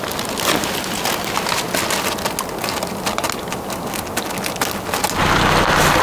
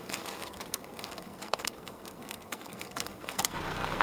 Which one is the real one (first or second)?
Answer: first